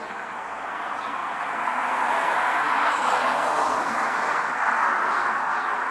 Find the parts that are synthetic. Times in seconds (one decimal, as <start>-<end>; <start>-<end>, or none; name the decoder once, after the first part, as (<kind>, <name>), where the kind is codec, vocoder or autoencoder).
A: 0.0-5.9 (codec, SNAC)